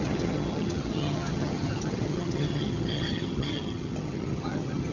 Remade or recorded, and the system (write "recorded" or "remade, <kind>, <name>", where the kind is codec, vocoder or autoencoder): remade, vocoder, HiFi-GAN